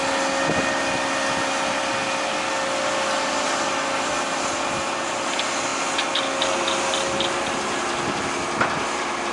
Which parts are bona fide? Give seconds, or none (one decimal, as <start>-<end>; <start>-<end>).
0.0-9.3